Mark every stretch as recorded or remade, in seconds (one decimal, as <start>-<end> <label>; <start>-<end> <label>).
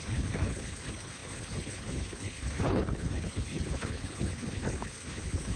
0.0-5.6 remade